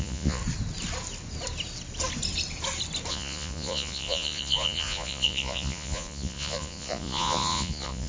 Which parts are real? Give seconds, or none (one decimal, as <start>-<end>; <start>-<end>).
0.4-3.1